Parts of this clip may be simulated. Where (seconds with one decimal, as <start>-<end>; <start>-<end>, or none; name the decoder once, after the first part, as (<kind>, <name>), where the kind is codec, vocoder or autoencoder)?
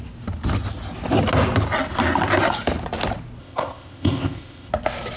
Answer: 3.4-4.7 (codec, ZipCodec)